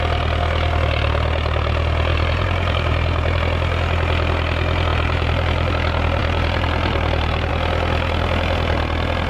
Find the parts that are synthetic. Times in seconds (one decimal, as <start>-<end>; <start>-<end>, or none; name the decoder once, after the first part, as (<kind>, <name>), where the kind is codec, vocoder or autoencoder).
2.1-3.4 (vocoder, BigVGAN v2); 4.9-5.7; 6.2-7.5